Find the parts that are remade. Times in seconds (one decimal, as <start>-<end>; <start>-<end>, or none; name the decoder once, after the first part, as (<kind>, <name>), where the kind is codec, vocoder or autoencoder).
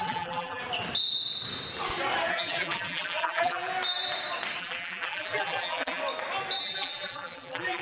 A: 0.0-0.6 (vocoder, BigVGAN v2); 2.3-3.7; 4.6-6.0; 6.6-7.8